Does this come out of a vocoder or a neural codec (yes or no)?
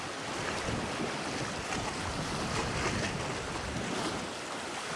no